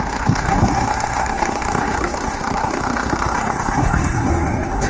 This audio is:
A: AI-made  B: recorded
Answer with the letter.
A